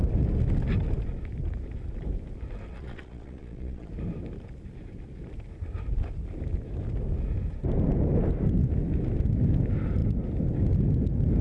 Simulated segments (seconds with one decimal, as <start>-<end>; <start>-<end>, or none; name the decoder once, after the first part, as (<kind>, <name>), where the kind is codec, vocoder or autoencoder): 2.7-3.9 (vocoder, Vocos)